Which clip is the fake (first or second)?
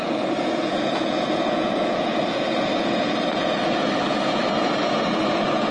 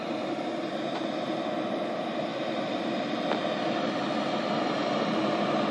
first